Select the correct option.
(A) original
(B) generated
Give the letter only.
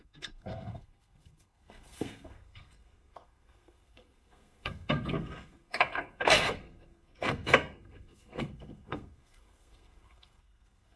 B